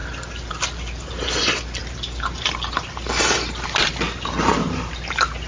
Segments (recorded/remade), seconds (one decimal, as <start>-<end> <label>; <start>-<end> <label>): 0.0-5.5 recorded